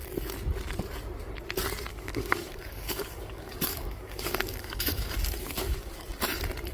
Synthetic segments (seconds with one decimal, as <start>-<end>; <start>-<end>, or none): 1.9-5.9